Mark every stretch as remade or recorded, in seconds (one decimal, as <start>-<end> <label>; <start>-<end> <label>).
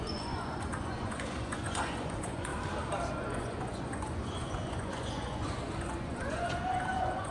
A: 0.0-2.5 remade; 2.5-3.1 recorded; 3.1-7.3 remade